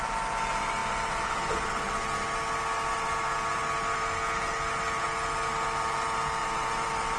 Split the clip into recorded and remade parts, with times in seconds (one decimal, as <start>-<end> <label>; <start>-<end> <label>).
0.0-6.4 recorded; 6.4-7.2 remade